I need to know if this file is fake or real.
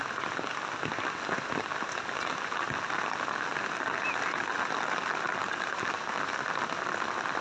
real